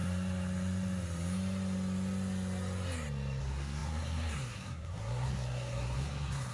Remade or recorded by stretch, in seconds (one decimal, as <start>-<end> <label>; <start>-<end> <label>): 0.0-3.4 recorded; 3.4-6.5 remade